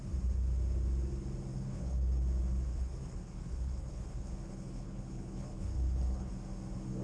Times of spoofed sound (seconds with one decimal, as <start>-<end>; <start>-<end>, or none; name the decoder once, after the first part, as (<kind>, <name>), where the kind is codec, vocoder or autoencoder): 1.5-2.2 (codec, HILCodec); 2.7-6.3